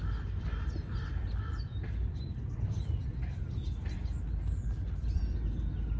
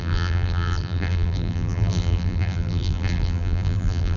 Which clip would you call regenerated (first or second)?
second